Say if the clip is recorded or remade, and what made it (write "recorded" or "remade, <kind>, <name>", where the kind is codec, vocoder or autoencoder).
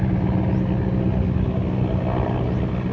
recorded